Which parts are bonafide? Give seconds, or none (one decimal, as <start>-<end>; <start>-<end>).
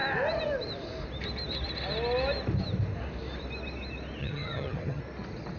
0.0-4.2; 5.0-5.6